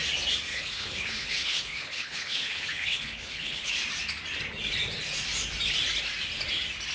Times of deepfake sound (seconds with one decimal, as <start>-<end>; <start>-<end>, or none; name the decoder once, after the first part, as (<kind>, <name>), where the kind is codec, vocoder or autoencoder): 0.5-3.7 (codec, HILCodec)

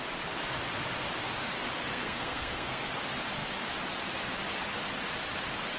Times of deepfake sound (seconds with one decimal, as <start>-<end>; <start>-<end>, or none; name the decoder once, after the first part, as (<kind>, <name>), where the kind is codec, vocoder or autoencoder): 1.9-2.9 (codec, SNAC)

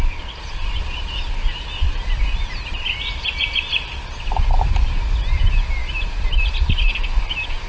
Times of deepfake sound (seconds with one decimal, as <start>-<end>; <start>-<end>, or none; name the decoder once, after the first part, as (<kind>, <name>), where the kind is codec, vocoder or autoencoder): none

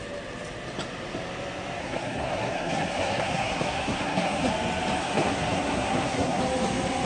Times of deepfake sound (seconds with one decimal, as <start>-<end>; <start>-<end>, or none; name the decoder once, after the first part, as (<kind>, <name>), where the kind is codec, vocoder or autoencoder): 1.8-4.5 (codec, SNAC); 5.0-6.4

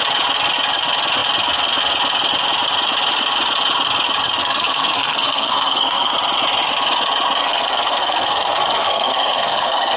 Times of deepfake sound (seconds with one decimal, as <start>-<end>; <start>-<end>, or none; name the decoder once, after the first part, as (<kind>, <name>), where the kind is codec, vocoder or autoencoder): 4.4-6.1 (codec, SNAC); 7.4-10.0

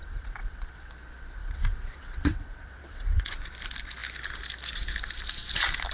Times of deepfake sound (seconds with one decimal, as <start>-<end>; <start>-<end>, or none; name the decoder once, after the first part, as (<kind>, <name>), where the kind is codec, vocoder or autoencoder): 0.0-0.9 (vocoder, WaveNeXt); 1.4-3.4